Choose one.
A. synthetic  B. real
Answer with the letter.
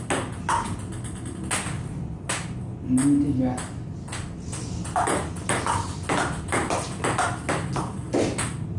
B